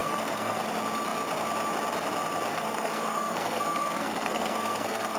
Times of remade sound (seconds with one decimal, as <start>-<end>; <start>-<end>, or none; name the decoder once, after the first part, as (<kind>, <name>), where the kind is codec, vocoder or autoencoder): 0.0-0.6 (codec, SNAC); 2.5-5.2